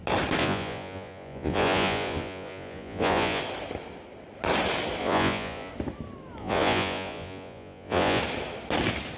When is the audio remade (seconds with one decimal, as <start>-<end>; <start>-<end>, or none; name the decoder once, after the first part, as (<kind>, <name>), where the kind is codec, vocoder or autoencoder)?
0.4-3.4 (vocoder, Vocos); 5.0-5.7; 6.4-8.2